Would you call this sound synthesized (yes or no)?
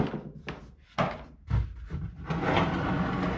no